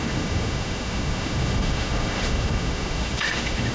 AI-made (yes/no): yes